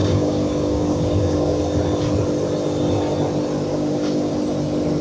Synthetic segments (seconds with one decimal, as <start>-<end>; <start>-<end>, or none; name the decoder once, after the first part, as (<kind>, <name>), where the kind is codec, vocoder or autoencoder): 0.0-1.6 (codec, DAC); 3.7-4.3